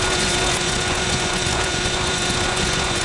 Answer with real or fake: fake